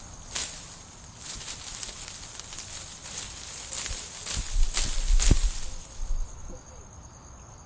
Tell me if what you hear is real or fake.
real